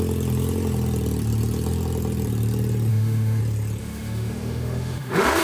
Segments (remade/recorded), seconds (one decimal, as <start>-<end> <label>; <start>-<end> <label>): 0.0-2.9 recorded; 2.9-3.4 remade; 3.4-3.8 recorded; 3.8-5.4 remade